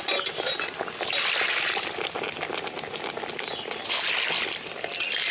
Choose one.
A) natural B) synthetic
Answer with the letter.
A